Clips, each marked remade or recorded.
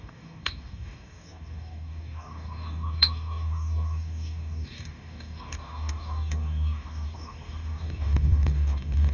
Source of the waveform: remade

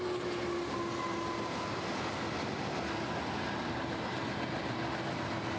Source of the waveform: recorded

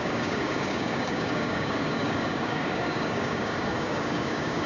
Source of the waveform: remade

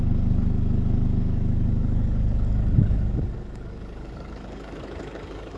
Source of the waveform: remade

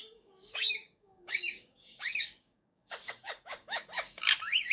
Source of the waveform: remade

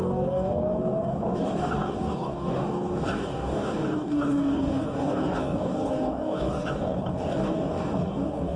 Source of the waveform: remade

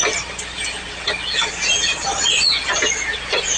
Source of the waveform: recorded